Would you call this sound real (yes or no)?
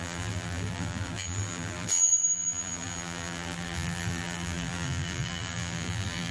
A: no